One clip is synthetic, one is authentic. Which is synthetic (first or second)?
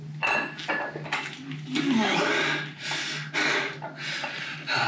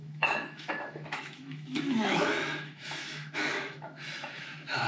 second